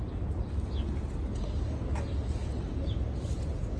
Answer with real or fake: real